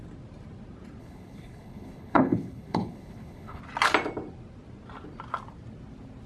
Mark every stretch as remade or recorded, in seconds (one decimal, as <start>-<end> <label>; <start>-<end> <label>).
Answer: 0.0-1.0 recorded; 1.0-3.6 remade; 3.6-6.3 recorded